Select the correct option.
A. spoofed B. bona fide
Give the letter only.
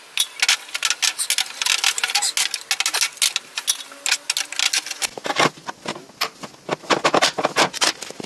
B